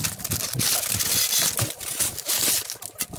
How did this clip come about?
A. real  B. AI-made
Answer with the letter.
A